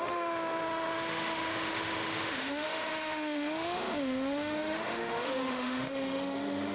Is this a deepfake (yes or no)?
yes